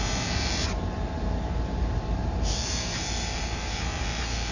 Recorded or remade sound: remade